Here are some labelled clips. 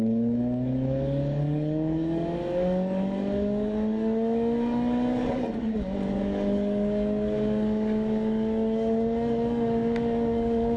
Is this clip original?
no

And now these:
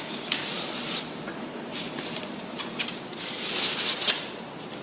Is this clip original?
no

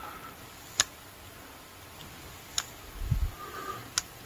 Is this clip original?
yes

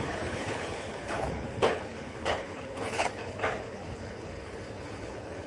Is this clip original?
no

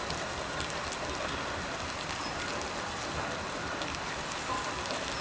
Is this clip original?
yes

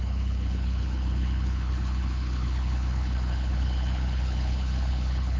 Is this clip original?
no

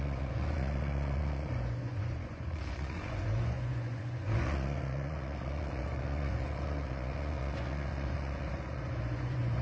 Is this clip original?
no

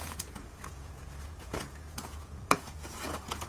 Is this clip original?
no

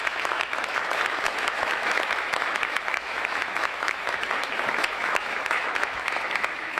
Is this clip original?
no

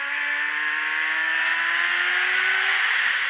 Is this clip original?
yes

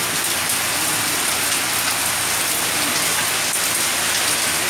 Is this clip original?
yes